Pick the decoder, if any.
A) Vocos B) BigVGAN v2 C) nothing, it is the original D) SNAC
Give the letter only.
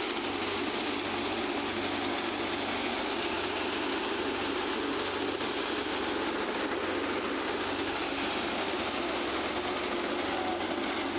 C